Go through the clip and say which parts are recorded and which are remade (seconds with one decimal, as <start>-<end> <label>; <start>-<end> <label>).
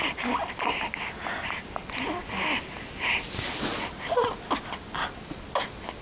0.0-6.0 recorded